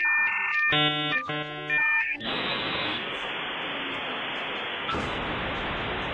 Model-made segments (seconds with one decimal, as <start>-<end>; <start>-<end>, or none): 1.8-3.3; 4.7-5.2